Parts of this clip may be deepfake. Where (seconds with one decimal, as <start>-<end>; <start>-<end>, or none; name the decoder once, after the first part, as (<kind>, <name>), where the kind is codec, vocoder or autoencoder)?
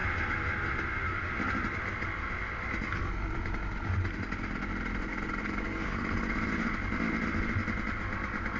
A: none